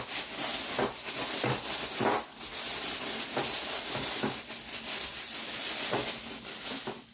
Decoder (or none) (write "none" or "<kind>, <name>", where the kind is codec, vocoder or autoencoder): none